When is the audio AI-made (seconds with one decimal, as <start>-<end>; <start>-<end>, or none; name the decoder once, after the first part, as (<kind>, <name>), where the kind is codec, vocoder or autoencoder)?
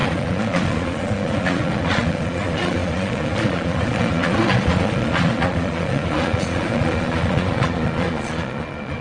0.0-9.0 (vocoder, Vocos)